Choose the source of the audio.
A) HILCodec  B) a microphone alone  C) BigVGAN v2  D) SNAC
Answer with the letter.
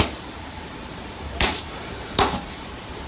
C